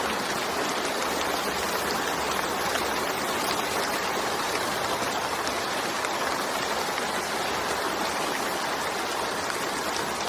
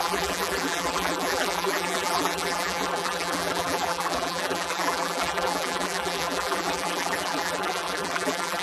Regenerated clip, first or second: second